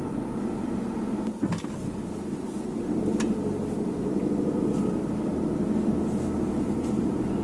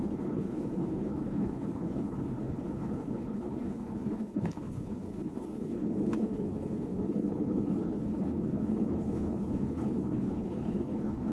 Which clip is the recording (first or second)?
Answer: first